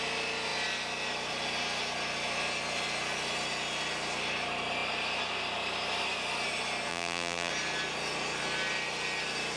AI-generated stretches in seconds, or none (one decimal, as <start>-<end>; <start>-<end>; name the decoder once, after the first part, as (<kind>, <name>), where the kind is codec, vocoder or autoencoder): 6.9-7.5 (vocoder, BigVGAN v2)